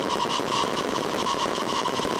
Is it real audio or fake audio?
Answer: fake